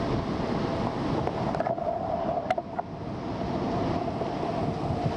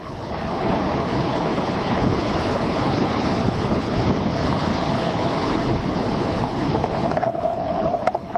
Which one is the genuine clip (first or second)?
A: first